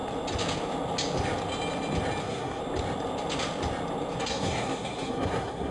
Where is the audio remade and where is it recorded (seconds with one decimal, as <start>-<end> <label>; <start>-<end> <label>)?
0.0-2.2 recorded; 2.2-2.6 remade; 2.6-4.2 recorded; 4.2-5.7 remade